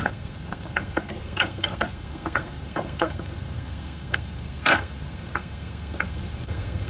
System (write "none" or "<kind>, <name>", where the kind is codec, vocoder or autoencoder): codec, SNAC